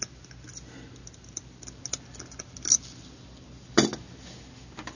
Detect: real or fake real